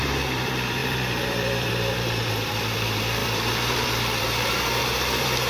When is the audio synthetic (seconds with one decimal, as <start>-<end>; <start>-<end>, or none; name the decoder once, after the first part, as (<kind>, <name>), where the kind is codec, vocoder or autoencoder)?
0.0-5.5 (vocoder, BigVGAN v2)